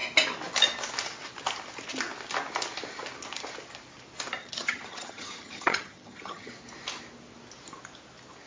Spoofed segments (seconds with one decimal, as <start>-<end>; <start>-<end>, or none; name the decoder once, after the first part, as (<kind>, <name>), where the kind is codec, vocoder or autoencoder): 4.4-6.5 (vocoder, HiFi-GAN)